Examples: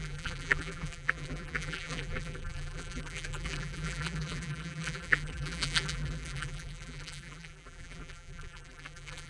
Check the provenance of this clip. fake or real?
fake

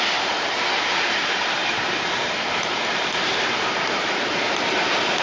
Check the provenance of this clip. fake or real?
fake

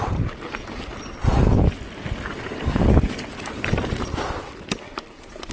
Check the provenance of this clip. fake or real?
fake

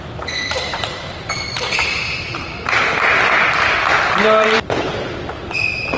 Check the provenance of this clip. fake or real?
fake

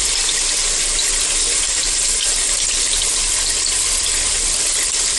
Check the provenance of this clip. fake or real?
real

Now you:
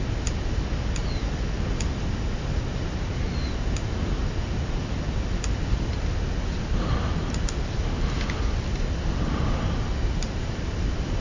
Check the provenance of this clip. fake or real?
real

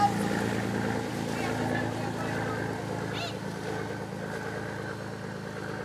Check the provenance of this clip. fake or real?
real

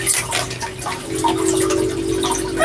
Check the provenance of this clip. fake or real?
real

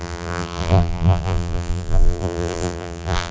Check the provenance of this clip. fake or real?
fake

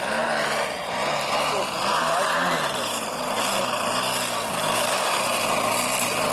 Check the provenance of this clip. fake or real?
real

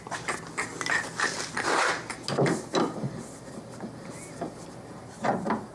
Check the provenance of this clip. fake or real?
real